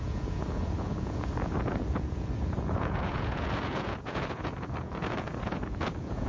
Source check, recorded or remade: remade